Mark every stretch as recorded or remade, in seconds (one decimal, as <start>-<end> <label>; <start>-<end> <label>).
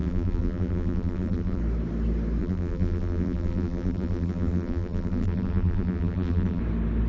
0.0-1.6 remade; 1.6-2.4 recorded; 2.4-6.6 remade; 6.6-7.1 recorded